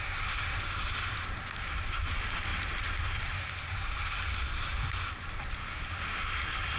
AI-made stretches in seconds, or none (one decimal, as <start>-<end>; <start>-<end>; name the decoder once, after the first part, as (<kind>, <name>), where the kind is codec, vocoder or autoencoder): none